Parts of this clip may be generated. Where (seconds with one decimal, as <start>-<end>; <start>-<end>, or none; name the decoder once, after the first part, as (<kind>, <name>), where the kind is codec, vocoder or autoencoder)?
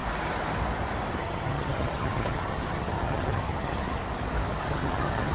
1.1-4.0 (vocoder, HiFi-GAN); 4.6-5.3